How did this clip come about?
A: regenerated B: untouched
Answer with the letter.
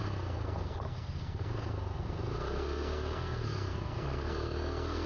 A